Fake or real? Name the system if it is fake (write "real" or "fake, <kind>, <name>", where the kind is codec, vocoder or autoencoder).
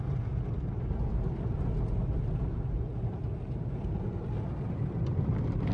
real